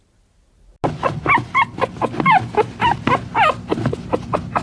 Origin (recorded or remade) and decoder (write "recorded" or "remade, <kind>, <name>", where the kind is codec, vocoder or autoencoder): recorded